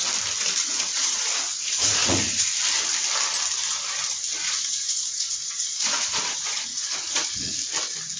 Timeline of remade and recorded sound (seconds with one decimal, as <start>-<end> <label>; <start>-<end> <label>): 0.0-0.9 recorded; 0.9-2.4 remade; 2.4-4.7 recorded; 4.7-7.5 remade; 7.5-8.2 recorded